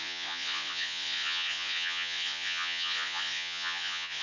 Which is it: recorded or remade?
remade